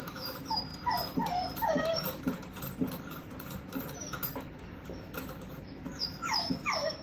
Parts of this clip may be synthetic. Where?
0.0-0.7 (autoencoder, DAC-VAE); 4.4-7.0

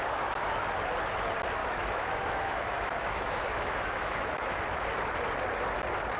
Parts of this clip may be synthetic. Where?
1.6-4.6 (autoencoder, DAC-VAE)